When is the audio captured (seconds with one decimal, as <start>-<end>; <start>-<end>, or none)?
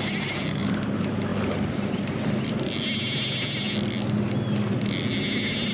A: 0.0-5.7